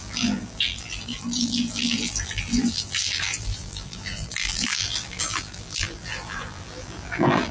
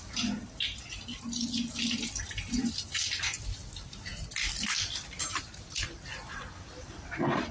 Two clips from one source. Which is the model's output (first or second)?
first